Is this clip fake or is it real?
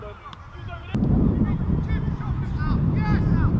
real